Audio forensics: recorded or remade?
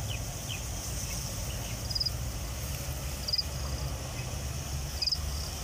recorded